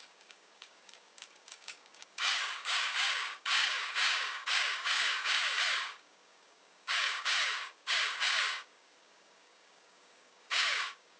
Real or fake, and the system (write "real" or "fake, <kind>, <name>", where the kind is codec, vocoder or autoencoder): fake, codec, DAC